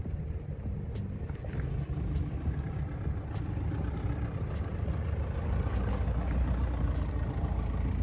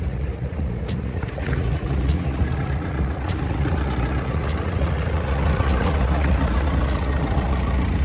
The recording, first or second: first